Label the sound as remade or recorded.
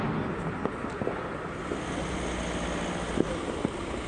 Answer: recorded